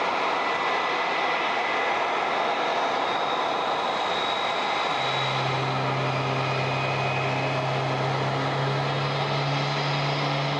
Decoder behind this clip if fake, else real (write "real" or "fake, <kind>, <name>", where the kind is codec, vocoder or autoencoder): real